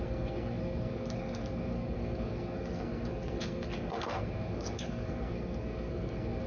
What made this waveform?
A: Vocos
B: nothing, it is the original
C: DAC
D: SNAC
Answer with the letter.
D